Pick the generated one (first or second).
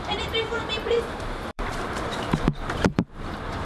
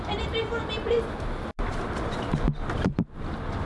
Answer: first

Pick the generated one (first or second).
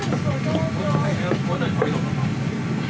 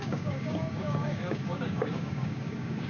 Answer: second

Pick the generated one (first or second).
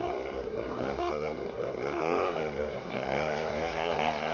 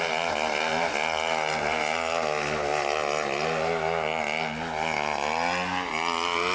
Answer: first